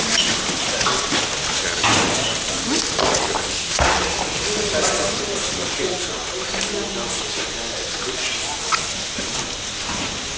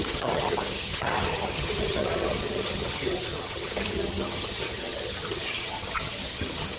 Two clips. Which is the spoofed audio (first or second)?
second